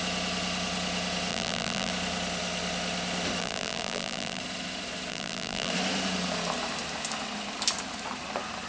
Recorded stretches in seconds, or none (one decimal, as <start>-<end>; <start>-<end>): 0.0-1.3; 1.9-3.4; 4.4-5.1; 5.7-8.7